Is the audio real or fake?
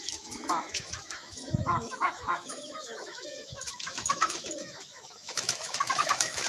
fake